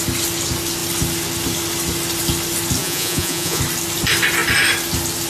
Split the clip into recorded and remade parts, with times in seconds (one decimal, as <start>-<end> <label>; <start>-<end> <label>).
0.0-2.8 recorded; 2.8-3.6 remade; 3.6-5.3 recorded